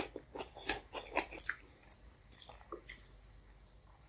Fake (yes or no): no